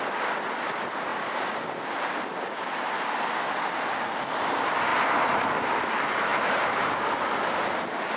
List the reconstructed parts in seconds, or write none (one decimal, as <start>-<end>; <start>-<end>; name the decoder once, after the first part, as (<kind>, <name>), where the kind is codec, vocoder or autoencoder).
4.9-5.5 (vocoder, BigVGAN v2); 6.3-7.4